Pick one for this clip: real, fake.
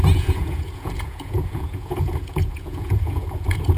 fake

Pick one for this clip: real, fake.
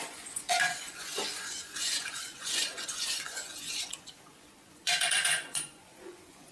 fake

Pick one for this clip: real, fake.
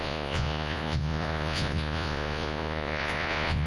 fake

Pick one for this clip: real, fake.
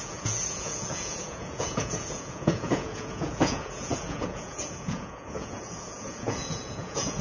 fake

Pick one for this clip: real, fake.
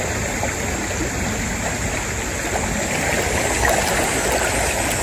real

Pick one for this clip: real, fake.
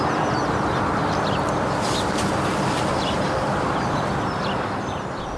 real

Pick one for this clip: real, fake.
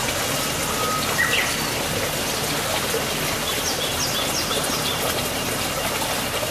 real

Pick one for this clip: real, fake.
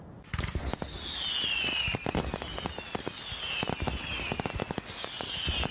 real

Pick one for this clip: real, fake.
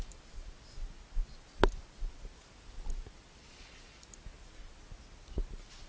real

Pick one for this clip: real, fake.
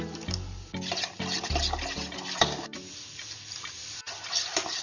real